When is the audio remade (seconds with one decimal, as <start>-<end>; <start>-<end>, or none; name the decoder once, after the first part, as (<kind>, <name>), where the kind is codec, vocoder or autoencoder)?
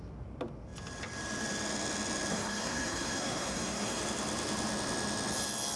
2.3-4.0 (codec, SNAC)